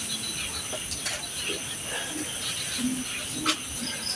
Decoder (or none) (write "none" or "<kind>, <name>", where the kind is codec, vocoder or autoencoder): none